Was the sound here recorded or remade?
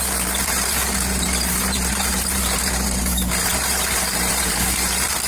remade